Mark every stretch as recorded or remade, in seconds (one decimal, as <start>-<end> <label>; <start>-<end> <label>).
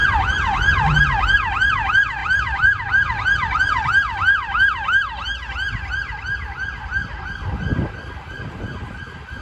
0.0-2.2 recorded; 2.2-2.9 remade; 2.9-9.4 recorded